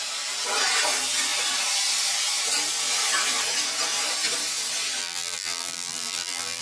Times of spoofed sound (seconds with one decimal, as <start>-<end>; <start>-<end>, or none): 5.0-6.6